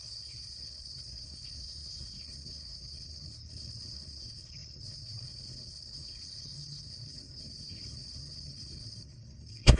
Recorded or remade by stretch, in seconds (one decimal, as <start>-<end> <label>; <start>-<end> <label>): 0.0-9.8 remade